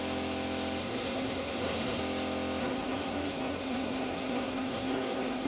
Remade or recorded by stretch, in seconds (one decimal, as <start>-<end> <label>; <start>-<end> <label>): 0.0-0.8 recorded; 0.8-2.0 remade; 2.0-2.6 recorded; 2.6-5.5 remade